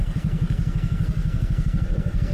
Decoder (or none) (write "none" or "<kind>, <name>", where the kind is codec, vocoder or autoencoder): codec, SNAC